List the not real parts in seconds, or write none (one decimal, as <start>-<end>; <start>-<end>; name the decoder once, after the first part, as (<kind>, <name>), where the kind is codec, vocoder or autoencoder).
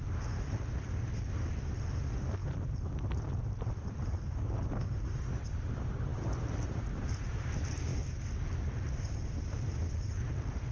2.4-4.6 (vocoder, BigVGAN v2); 6.1-6.8